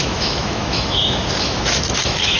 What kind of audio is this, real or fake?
fake